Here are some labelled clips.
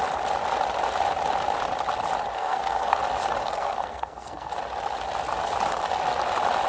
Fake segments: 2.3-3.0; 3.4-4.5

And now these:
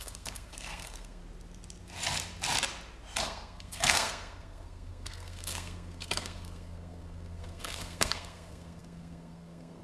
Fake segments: 0.0-1.2; 3.2-9.8

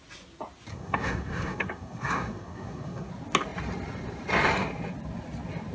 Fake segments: 0.7-3.1